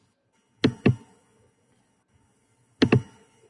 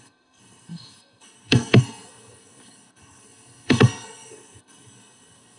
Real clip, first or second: first